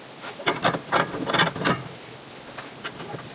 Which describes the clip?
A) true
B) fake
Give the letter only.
A